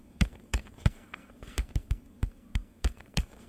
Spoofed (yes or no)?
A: yes